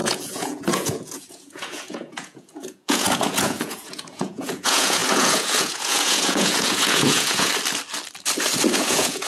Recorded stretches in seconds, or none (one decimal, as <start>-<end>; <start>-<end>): 7.5-8.7